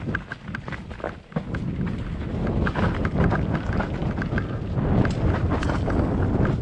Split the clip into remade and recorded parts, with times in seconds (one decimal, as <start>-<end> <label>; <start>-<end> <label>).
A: 0.0-6.6 recorded